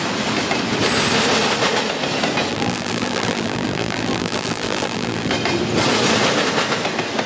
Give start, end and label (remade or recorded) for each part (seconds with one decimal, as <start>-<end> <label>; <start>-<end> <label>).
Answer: 0.0-2.5 recorded; 2.5-5.3 remade; 5.3-7.3 recorded